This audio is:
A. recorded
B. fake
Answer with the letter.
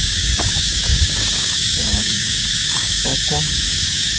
B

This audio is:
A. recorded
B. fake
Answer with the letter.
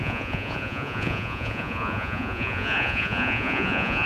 B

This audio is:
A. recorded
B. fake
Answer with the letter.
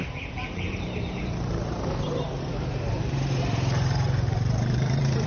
B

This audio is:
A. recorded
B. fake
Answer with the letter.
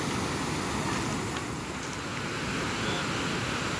A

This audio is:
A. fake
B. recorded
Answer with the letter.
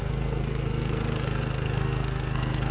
A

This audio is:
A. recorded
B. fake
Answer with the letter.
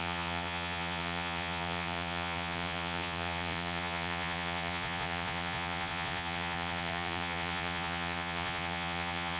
B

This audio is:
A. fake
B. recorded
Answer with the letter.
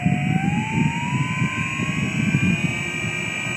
B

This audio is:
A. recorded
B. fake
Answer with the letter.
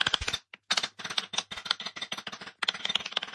A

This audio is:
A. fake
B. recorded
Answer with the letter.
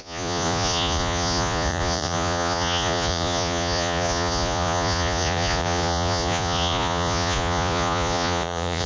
A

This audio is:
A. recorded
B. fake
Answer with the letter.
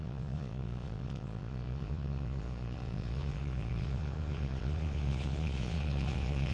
B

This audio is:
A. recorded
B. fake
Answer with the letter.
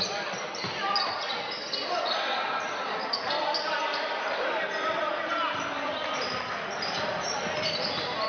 B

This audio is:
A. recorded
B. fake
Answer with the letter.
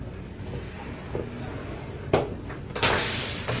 A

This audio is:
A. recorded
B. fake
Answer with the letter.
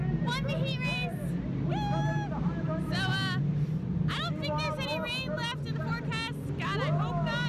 A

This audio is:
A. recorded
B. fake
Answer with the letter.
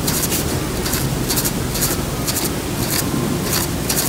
A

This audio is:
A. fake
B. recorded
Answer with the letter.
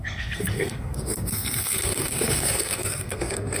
A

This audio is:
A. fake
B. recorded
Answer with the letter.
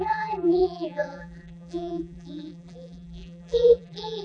A